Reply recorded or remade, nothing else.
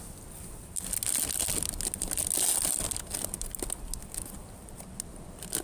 recorded